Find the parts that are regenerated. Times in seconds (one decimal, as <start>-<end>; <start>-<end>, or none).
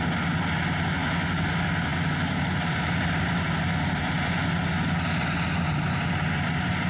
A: none